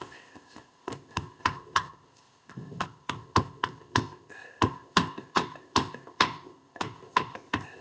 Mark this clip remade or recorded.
remade